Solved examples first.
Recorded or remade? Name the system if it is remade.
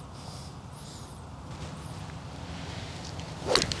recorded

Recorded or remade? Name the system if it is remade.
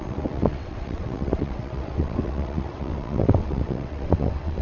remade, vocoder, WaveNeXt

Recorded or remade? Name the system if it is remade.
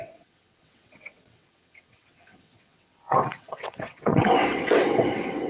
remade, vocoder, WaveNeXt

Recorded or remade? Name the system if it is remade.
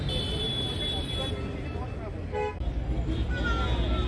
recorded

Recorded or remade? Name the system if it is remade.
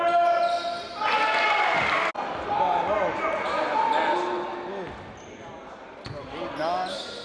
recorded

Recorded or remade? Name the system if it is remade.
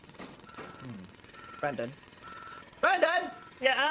remade, vocoder, WaveNeXt